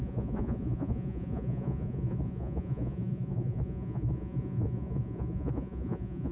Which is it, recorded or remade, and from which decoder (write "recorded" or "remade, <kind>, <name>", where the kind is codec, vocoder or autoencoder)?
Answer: remade, vocoder, Vocos